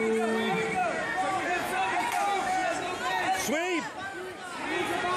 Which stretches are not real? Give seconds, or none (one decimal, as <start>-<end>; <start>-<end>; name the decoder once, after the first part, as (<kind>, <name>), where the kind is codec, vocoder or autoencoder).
0.8-2.0 (vocoder, BigVGAN v2)